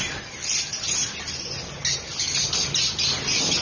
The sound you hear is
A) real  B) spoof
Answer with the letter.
A